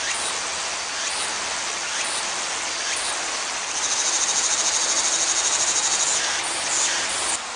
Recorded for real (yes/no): yes